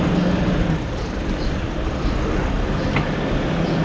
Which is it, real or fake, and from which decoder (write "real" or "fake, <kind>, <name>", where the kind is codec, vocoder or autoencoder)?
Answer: real